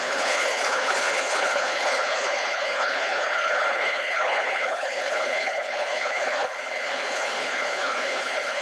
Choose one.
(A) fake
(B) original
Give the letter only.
A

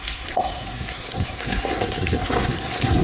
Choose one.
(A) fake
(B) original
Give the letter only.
A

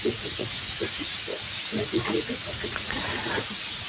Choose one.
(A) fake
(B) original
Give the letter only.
A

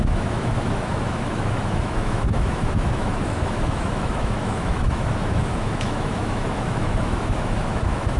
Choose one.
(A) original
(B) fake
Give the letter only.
B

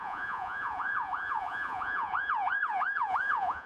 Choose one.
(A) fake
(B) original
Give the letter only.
A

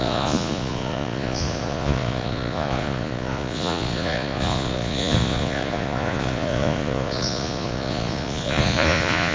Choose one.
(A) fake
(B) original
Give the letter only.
A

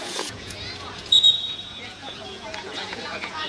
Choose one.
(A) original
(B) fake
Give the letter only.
B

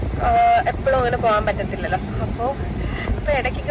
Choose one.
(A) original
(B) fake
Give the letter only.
A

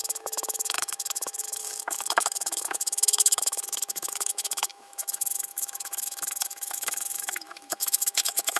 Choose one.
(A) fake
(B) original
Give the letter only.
A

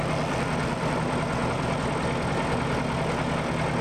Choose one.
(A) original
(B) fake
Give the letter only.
A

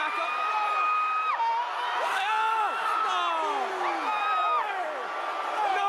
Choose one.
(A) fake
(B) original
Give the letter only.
B